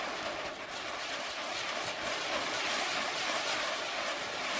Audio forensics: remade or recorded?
recorded